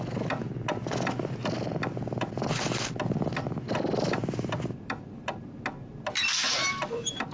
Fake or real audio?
real